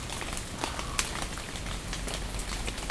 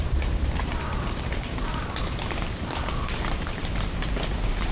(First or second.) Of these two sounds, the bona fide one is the first